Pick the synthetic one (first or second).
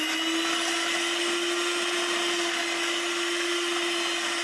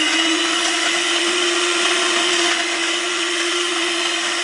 second